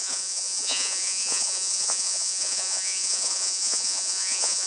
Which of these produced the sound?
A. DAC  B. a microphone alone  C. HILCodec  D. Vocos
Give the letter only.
D